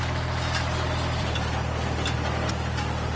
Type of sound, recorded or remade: recorded